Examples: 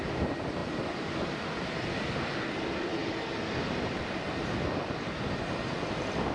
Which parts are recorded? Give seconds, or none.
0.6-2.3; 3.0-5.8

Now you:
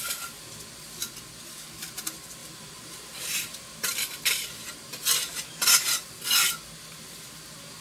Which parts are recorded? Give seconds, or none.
0.0-2.4; 6.1-7.8

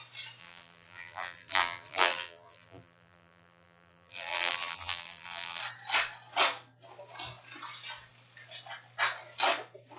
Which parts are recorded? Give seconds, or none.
0.0-0.4; 5.6-10.0

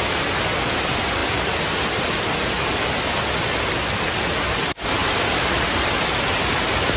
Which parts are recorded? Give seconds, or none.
0.0-1.2; 2.5-5.0; 6.0-7.0

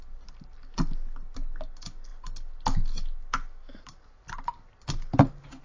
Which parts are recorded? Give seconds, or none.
0.0-5.6

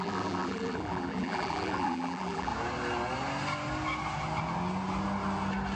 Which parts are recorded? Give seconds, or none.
2.5-5.8